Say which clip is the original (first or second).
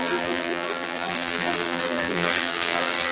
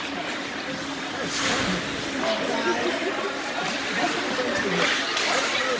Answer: second